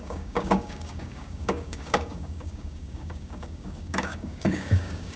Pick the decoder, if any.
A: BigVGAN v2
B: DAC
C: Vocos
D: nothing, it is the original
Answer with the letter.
B